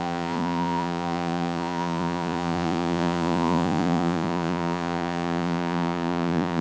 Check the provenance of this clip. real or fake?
fake